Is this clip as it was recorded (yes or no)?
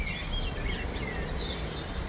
yes